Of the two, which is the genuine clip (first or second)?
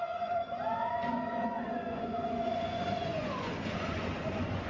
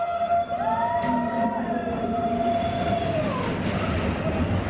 second